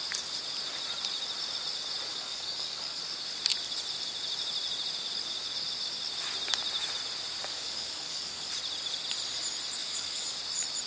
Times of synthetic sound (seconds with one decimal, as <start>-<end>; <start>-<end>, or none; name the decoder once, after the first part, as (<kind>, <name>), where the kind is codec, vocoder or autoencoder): 2.1-3.0 (codec, DAC); 7.4-8.5; 9.8-10.4